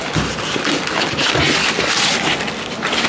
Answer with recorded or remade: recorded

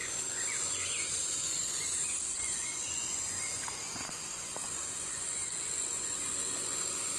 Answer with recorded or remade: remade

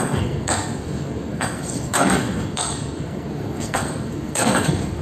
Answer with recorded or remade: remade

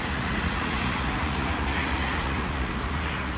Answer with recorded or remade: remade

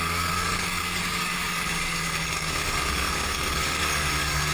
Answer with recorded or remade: remade